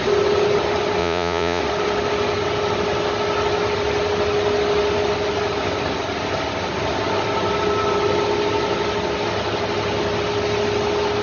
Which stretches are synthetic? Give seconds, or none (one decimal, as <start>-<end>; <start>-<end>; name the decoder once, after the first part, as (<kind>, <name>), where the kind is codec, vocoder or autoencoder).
1.0-1.6 (vocoder, Vocos)